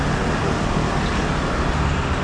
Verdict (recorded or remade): recorded